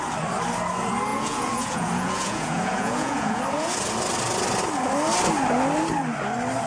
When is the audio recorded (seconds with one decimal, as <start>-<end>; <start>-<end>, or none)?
0.0-1.1; 3.4-6.7